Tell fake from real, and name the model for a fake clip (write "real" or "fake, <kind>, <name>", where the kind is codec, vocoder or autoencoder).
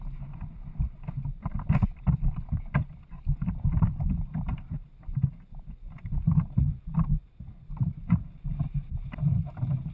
real